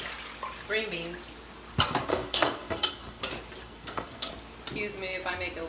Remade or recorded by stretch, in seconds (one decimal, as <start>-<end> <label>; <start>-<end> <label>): 0.0-2.1 recorded; 2.1-3.2 remade; 3.2-3.6 recorded; 3.6-4.3 remade; 4.3-5.7 recorded